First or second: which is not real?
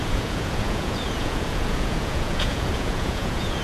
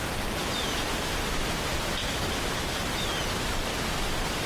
first